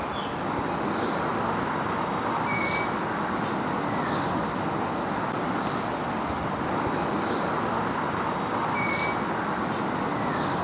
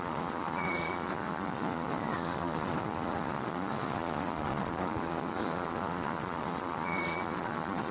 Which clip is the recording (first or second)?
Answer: first